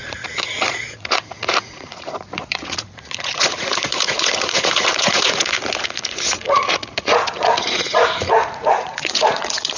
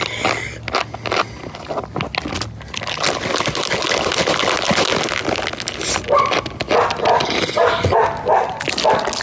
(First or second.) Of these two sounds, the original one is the second